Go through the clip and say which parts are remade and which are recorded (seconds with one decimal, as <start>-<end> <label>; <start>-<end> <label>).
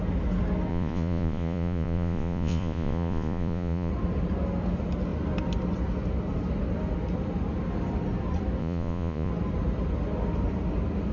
0.0-0.7 recorded; 0.7-3.9 remade; 3.9-8.6 recorded; 8.6-9.3 remade; 9.3-11.1 recorded